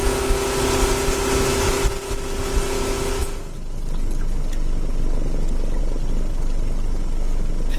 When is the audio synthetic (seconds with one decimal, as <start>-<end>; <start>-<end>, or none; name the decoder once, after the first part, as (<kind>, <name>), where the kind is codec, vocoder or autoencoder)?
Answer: none